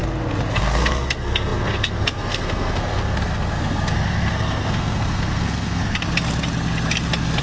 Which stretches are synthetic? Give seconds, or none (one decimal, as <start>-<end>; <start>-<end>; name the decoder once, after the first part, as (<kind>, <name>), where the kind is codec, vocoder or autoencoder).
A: 0.5-5.8 (codec, SNAC)